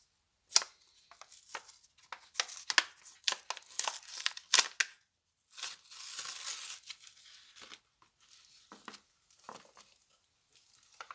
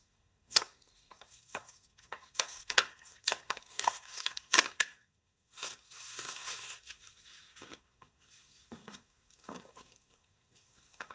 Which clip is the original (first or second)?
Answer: first